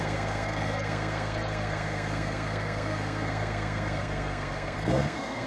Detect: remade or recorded remade